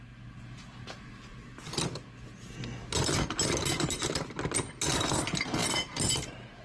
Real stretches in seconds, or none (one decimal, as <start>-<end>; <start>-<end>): 0.0-6.6